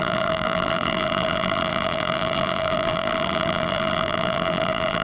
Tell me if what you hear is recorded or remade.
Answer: remade